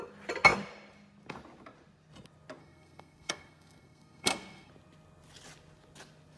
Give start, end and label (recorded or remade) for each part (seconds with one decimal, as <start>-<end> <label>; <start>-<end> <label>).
0.0-2.6 recorded; 2.6-4.7 remade; 4.7-6.4 recorded